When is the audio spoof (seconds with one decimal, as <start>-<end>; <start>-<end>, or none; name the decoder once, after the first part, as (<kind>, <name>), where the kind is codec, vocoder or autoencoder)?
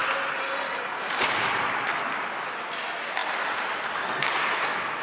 0.0-2.8 (vocoder, BigVGAN v2); 3.2-5.0